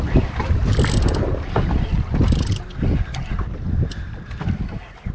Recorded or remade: recorded